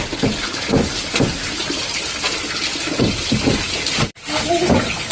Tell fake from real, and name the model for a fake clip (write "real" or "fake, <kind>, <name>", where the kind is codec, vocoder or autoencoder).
real